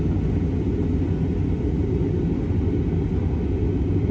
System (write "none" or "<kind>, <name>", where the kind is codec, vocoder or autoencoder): none